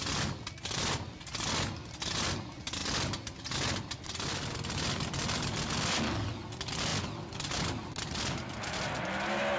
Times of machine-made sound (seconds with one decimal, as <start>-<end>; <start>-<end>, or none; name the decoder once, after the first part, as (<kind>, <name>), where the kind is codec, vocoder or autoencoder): none